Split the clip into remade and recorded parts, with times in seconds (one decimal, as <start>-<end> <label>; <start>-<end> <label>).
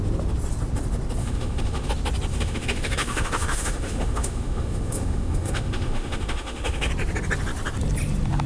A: 0.0-1.2 recorded; 1.2-1.9 remade; 1.9-2.3 recorded; 2.3-6.9 remade; 6.9-8.5 recorded